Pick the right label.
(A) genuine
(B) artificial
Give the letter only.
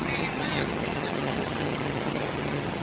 B